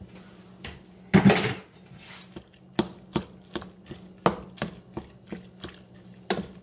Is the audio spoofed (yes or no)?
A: no